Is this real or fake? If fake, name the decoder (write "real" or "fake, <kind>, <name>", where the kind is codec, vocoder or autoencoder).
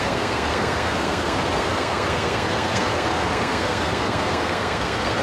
fake, codec, SNAC